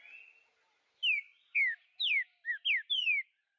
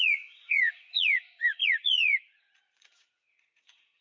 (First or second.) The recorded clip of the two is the first